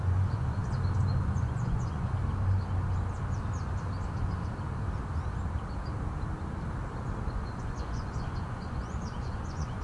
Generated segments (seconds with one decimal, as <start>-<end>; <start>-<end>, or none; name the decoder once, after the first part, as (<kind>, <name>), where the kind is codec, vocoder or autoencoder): 0.0-0.6 (vocoder, Vocos); 1.2-2.2; 7.3-9.8